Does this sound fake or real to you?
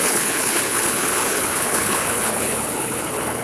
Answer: fake